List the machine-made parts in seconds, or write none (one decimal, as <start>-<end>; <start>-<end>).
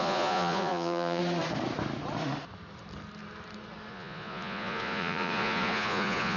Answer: 0.0-1.2; 3.9-6.4